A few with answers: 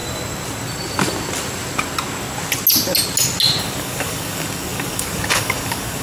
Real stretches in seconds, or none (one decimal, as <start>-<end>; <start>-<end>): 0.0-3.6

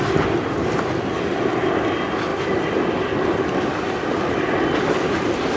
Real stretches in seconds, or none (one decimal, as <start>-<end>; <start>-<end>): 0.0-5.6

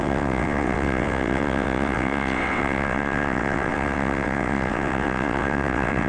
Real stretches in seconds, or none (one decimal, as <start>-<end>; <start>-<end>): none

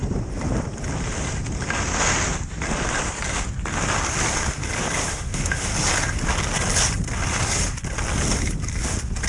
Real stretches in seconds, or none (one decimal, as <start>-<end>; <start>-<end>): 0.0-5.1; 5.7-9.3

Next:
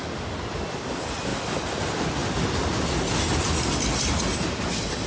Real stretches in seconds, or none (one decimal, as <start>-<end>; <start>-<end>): 0.0-5.1